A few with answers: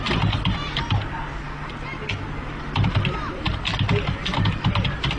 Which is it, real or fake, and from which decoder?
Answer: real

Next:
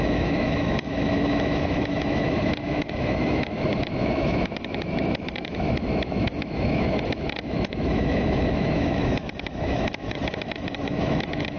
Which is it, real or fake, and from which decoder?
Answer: fake, autoencoder, DAC-VAE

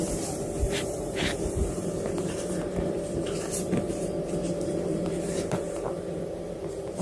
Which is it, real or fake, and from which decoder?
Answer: fake, vocoder, BigVGAN v2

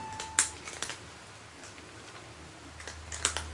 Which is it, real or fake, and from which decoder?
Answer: real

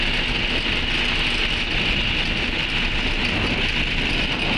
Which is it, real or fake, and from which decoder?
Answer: real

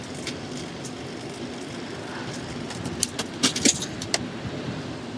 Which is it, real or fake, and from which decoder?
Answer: real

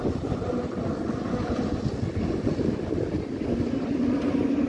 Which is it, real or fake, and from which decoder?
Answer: real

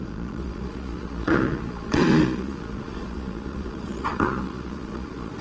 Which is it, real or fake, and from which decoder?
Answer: fake, vocoder, Vocos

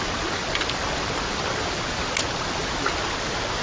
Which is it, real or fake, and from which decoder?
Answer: real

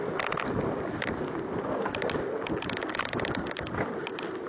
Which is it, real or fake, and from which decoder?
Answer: real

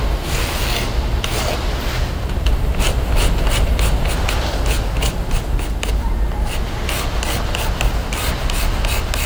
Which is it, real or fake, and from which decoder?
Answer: real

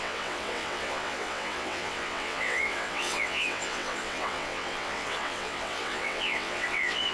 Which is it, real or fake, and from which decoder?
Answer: fake, vocoder, WaveNeXt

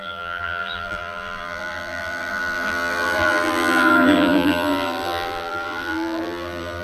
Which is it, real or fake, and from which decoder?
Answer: fake, vocoder, BigVGAN v2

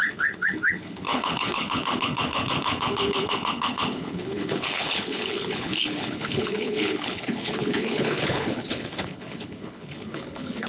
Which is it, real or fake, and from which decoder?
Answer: fake, codec, HILCodec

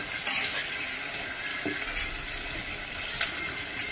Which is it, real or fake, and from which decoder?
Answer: real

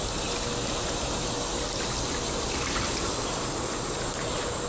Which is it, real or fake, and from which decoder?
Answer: real